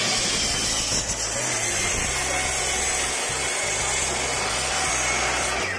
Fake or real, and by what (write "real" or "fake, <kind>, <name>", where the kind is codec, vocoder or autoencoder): real